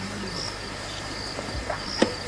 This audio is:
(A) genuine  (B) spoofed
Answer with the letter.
B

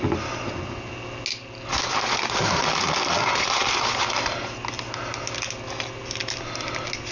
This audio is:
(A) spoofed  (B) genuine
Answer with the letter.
B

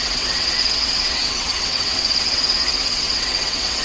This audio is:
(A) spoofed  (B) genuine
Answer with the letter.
A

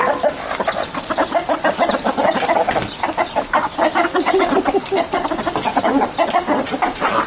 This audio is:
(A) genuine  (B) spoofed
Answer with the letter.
A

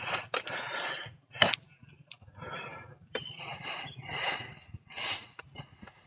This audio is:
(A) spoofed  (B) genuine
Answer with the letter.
B